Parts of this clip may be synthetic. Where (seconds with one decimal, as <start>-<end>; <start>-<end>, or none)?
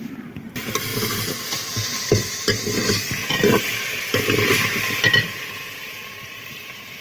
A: 0.0-7.0